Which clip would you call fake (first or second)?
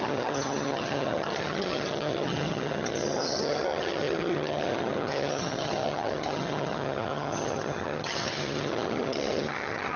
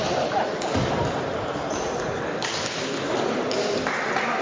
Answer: first